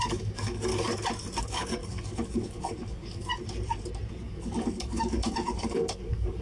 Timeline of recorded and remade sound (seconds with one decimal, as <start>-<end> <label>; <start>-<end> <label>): 0.0-0.7 remade; 0.7-1.4 recorded; 1.4-3.3 remade; 3.3-4.1 recorded; 4.1-6.4 remade